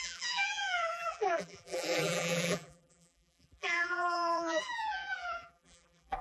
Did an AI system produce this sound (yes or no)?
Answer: yes